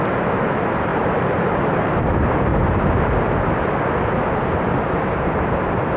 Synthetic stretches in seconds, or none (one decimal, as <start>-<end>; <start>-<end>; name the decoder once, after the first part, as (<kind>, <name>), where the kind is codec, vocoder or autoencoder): 0.9-2.1 (vocoder, BigVGAN v2); 2.5-3.1